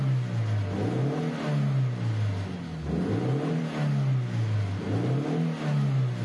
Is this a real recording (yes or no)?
yes